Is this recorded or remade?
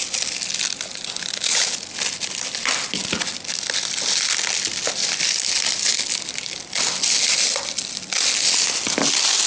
recorded